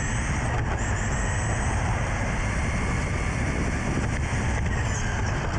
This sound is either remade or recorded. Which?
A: recorded